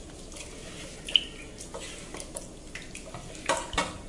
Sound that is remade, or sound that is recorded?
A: recorded